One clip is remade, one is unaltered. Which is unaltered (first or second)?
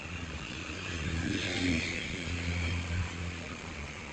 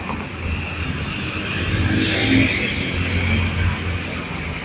second